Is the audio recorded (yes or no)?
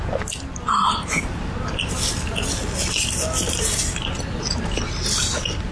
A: yes